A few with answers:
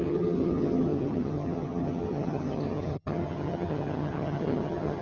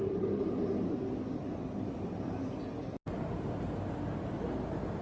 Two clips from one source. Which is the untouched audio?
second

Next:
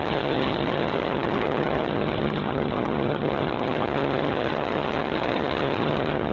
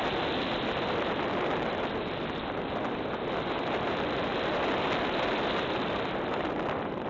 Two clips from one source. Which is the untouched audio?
second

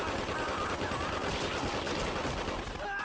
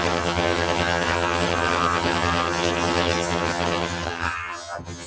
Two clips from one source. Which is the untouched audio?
first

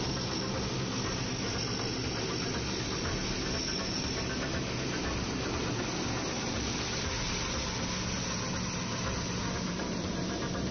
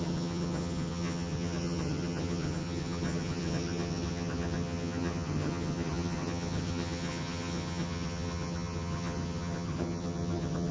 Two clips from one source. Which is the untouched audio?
first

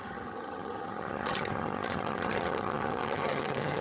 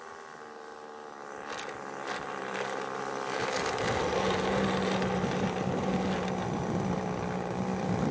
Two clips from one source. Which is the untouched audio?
second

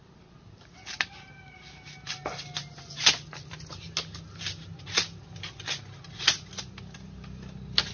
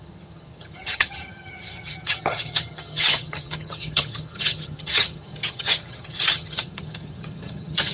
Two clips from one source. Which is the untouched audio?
first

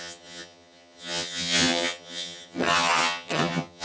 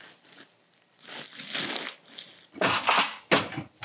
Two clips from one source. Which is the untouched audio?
second